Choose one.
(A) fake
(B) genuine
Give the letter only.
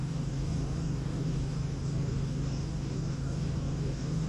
A